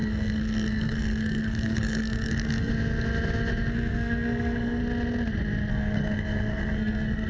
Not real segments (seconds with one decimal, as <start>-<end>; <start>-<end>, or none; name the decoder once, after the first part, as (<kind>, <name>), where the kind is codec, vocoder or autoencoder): 0.0-2.7 (codec, SNAC); 3.7-4.8; 5.7-7.3